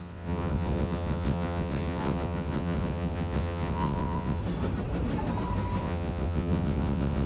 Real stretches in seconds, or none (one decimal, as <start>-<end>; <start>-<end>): 4.4-5.8